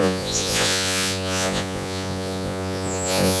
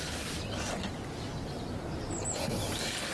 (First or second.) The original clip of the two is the second